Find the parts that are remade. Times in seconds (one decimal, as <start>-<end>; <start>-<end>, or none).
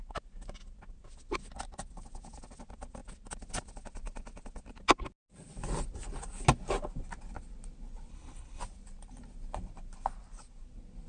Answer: 8.1-8.6